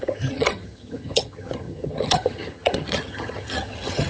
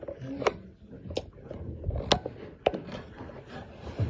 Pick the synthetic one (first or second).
first